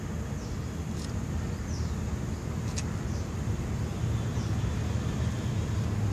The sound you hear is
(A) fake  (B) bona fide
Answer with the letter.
B